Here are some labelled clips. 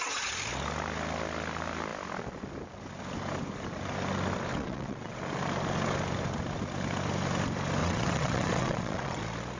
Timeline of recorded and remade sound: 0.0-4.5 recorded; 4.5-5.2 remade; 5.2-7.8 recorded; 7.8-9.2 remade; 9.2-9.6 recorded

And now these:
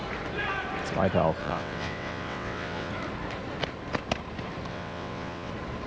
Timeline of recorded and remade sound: 0.0-1.4 recorded; 1.4-2.9 remade; 2.9-4.7 recorded; 4.7-5.5 remade; 5.5-5.9 recorded

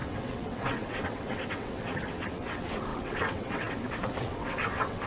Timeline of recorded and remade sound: 0.0-5.1 remade

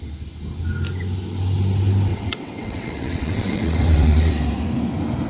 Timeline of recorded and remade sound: 0.0-2.1 recorded; 2.1-4.3 remade; 4.3-5.3 recorded

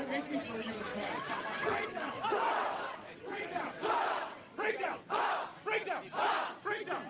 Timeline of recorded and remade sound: 0.0-0.9 recorded; 0.9-5.2 remade; 5.2-7.1 recorded

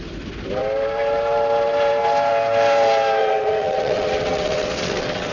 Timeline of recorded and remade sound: 0.0-3.2 recorded; 3.2-5.3 remade